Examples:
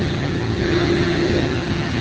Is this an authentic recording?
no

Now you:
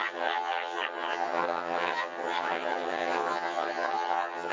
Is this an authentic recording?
no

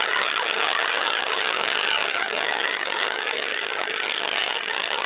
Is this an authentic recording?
no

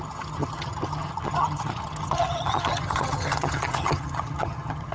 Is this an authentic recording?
no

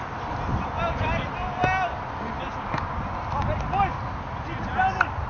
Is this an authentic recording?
yes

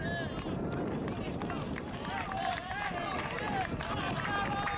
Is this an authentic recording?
yes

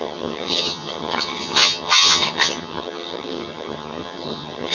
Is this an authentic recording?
no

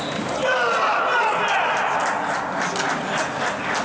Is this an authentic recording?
yes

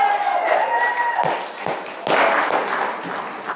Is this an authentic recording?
yes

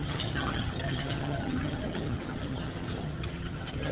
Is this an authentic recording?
no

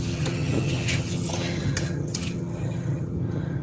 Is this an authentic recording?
no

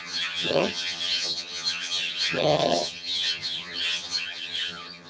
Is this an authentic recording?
no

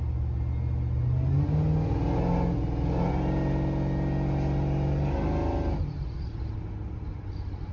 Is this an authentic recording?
yes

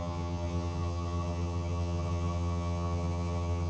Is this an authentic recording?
no